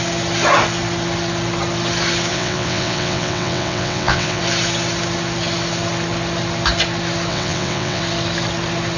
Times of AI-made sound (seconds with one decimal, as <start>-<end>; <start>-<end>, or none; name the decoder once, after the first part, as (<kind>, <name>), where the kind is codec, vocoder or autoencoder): 2.3-4.4 (vocoder, WaveNeXt); 7.3-8.0